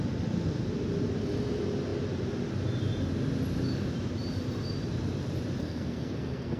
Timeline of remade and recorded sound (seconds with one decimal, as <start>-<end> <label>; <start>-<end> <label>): 0.0-5.6 recorded; 5.6-6.6 remade